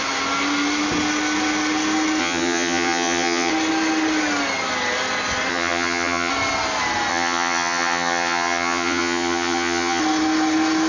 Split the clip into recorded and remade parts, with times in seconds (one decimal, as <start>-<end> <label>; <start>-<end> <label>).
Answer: 0.0-2.2 recorded; 2.2-3.5 remade; 3.5-5.5 recorded; 5.5-6.3 remade; 6.3-7.1 recorded; 7.1-10.0 remade; 10.0-10.9 recorded